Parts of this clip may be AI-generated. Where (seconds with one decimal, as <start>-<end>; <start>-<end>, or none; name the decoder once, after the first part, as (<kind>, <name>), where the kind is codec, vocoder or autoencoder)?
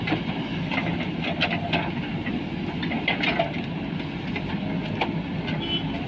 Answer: none